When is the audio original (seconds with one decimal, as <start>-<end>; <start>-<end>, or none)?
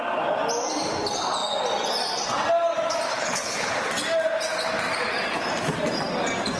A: 0.0-3.1; 3.7-6.6